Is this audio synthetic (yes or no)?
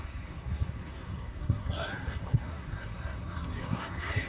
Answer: yes